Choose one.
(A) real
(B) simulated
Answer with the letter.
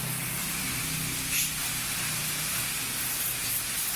A